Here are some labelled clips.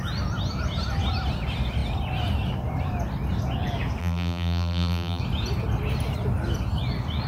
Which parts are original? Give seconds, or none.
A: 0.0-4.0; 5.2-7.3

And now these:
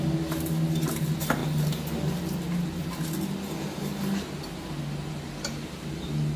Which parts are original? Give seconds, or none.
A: 0.0-6.4

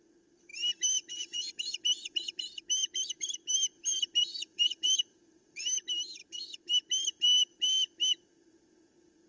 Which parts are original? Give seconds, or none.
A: 0.0-0.5; 1.5-4.3; 5.6-9.3

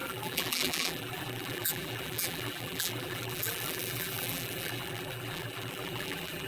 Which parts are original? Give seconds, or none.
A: none

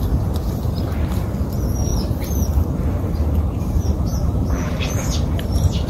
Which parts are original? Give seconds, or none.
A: 0.0-4.1; 5.0-5.9

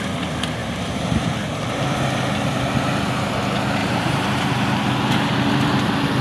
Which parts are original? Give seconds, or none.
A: 0.0-0.6; 1.3-3.8; 4.7-6.2

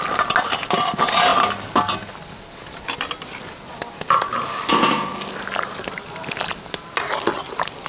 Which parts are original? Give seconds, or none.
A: 0.0-7.9

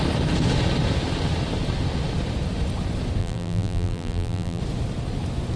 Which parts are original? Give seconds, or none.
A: 0.0-3.2; 4.6-5.6